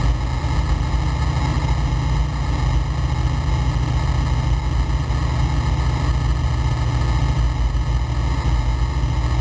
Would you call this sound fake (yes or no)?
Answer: no